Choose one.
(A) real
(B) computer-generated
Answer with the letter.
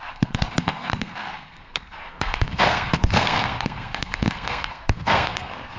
B